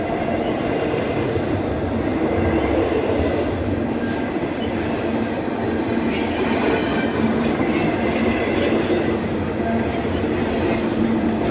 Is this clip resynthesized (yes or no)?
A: no